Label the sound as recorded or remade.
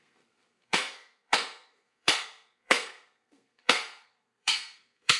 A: remade